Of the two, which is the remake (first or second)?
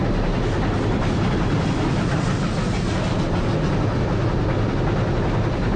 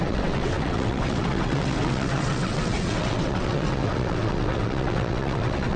second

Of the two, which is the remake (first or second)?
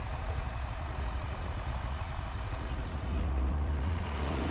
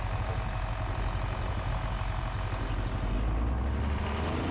first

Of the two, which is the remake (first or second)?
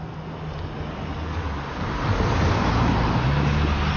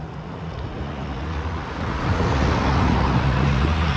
second